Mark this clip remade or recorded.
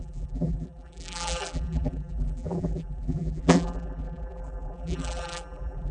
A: remade